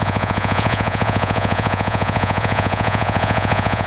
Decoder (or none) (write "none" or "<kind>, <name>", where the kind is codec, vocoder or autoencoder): vocoder, Vocos